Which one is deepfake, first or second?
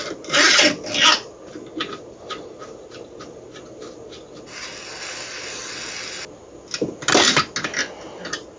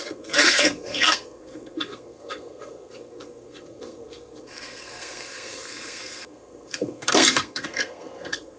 second